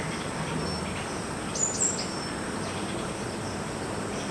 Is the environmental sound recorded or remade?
recorded